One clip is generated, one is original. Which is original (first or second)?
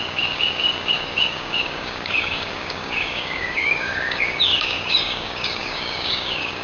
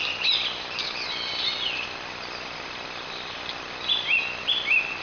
second